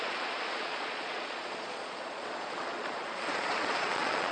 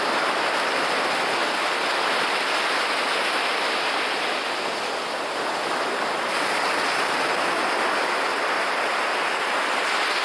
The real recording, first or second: second